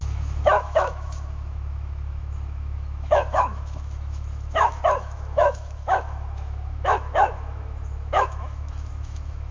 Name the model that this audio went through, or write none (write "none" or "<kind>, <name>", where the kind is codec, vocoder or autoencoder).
autoencoder, DAC-VAE